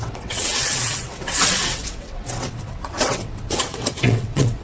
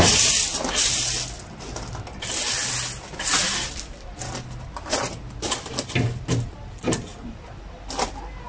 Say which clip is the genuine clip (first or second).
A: second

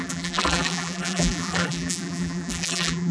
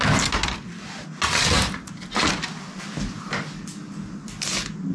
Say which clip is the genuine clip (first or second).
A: second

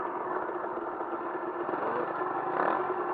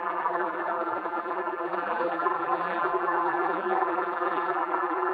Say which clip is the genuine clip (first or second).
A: first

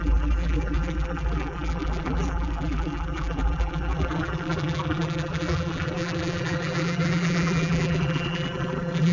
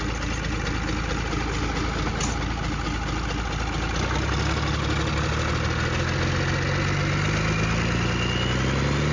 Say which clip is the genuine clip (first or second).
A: second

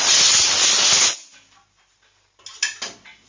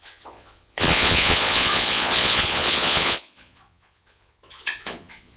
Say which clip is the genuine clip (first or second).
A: first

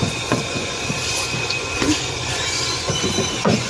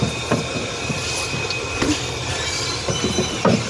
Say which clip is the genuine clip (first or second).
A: second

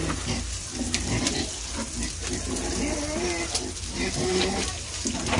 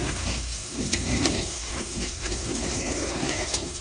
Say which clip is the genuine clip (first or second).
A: first